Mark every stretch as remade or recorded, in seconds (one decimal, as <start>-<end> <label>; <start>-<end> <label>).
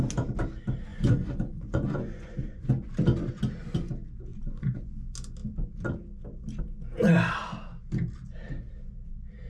0.0-0.9 recorded; 0.9-2.7 remade; 2.7-4.3 recorded; 4.3-4.8 remade; 4.8-9.5 recorded